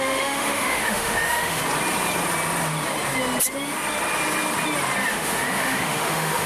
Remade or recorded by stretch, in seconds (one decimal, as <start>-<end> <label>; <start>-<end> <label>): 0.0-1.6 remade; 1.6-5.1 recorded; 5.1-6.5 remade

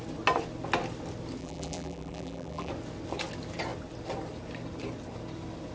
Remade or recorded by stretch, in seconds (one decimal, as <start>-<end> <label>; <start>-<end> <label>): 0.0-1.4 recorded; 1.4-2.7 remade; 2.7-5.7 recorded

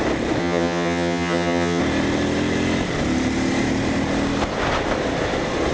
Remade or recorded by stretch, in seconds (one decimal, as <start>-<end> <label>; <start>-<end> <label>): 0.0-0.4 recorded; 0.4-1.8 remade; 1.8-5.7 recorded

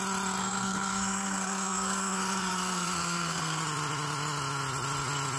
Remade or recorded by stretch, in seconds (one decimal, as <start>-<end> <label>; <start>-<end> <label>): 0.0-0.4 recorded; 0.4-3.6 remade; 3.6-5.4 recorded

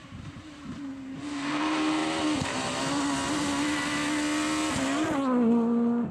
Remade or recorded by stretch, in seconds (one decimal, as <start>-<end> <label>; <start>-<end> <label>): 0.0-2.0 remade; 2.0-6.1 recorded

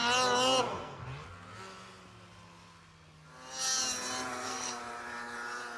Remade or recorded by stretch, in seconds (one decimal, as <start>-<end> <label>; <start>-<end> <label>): 0.0-0.6 recorded; 0.6-1.0 remade; 1.0-4.3 recorded; 4.3-4.8 remade; 4.8-5.8 recorded

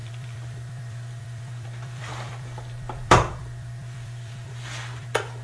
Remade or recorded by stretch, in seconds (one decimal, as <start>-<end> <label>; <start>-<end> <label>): 0.0-5.4 remade